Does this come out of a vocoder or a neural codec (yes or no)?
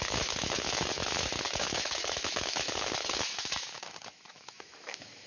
yes